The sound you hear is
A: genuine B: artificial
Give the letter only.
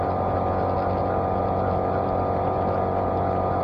A